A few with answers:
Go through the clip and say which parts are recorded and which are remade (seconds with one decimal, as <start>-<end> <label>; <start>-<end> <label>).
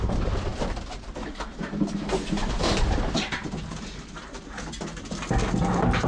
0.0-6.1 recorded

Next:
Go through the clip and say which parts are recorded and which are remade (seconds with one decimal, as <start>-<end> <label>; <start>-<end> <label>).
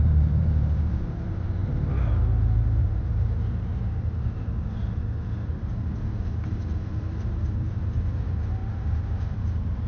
0.0-1.6 remade; 1.6-2.8 recorded; 2.8-4.8 remade; 4.8-7.1 recorded; 7.1-9.9 remade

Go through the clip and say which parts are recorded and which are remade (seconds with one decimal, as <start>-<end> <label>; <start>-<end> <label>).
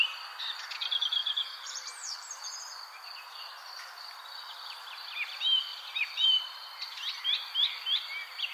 0.0-1.2 recorded; 1.2-2.4 remade; 2.4-5.7 recorded; 5.7-6.8 remade; 6.8-8.5 recorded